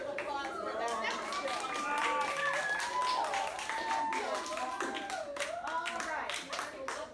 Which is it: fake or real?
real